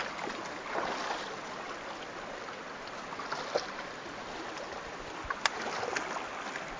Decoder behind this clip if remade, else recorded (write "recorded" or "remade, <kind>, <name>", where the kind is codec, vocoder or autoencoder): recorded